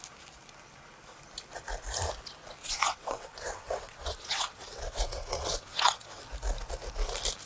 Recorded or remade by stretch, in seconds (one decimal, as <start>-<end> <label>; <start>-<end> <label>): 0.0-2.6 recorded; 2.6-6.2 remade; 6.2-7.5 recorded